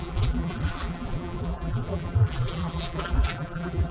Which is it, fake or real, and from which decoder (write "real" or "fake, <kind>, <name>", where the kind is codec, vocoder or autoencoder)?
fake, vocoder, BigVGAN v2